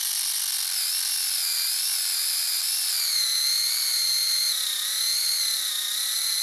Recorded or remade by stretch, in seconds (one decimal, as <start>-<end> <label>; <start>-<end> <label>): 0.0-6.4 recorded